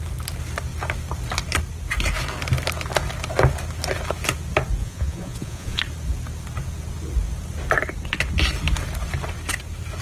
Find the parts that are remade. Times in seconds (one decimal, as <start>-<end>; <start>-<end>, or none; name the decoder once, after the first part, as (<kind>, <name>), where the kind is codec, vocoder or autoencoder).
4.8-5.8 (vocoder, Vocos)